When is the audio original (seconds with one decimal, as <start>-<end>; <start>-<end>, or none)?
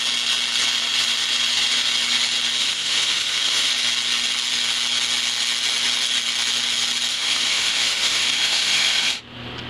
0.0-2.6; 3.7-7.1; 9.2-9.7